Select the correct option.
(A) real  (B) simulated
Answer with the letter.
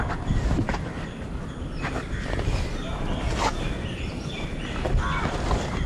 A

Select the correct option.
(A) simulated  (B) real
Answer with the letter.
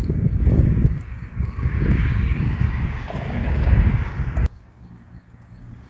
A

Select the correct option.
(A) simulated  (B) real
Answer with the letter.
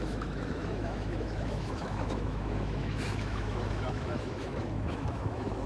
A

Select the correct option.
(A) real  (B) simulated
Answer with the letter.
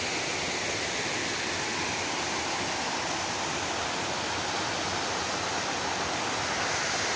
A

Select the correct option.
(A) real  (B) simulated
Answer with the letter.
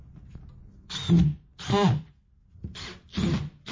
A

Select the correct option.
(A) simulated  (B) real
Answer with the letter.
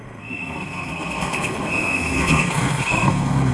A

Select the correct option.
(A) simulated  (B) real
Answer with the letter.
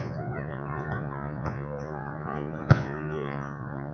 A